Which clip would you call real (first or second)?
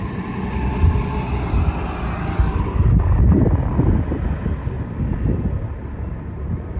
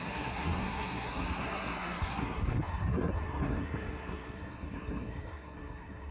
first